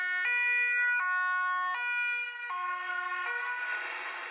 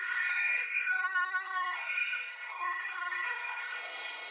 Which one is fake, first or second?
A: second